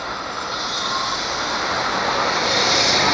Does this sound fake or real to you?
real